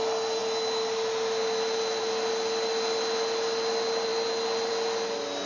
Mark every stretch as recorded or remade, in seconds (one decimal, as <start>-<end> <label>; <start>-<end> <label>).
0.0-5.5 recorded